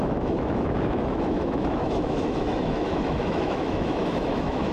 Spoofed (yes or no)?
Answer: yes